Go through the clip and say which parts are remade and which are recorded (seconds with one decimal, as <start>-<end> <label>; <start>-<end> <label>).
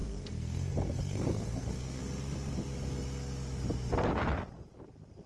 0.0-2.0 remade; 2.0-5.3 recorded